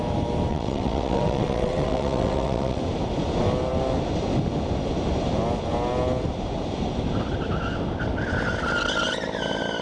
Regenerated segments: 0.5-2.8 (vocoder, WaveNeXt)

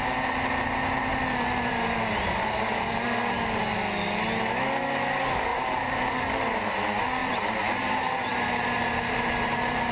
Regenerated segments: 1.1-3.6 (vocoder, BigVGAN v2); 5.5-6.1; 7.2-9.9

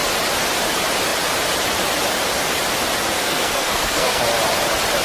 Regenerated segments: 3.2-4.2 (codec, SNAC)

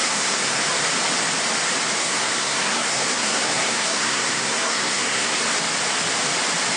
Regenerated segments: 0.0-0.6 (codec, SNAC); 2.0-5.4

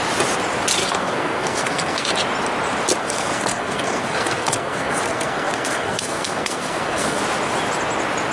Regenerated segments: 0.8-2.1 (codec, SNAC); 3.0-7.2

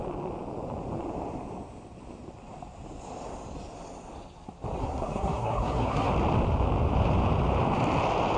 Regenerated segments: 4.8-6.1 (codec, SNAC)

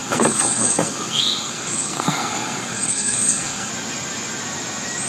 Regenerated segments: 0.0-3.7 (codec, SNAC)

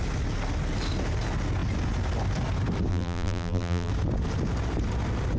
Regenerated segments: 2.9-3.9 (vocoder, BigVGAN v2)